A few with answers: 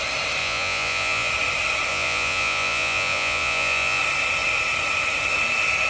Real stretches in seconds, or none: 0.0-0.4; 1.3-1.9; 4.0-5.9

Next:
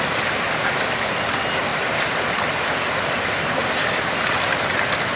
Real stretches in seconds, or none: 0.0-5.2

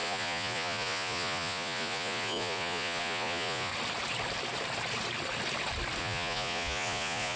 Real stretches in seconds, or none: 3.7-6.0

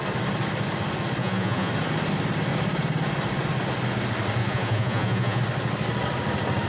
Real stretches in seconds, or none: 0.0-1.2; 1.7-4.4; 5.4-6.7

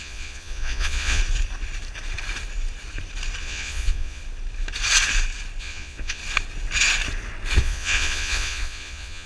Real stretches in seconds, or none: 1.2-3.4; 4.2-5.6; 6.2-7.6